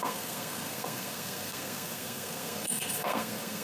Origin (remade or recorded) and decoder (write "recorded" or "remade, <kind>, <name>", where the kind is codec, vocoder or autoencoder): remade, codec, SNAC